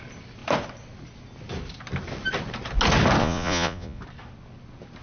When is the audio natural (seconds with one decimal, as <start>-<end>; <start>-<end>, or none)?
0.0-3.2; 4.0-5.0